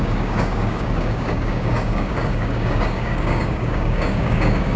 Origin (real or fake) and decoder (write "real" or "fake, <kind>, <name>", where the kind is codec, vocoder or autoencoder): fake, codec, DAC